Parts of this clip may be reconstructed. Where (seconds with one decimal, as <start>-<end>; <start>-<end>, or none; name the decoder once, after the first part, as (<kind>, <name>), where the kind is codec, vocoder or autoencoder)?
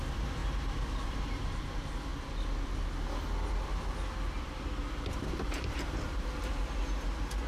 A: 0.0-2.1 (vocoder, BigVGAN v2); 4.3-7.5